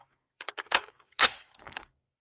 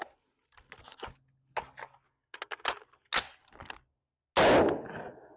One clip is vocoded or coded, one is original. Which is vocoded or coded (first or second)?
first